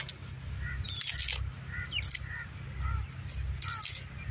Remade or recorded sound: recorded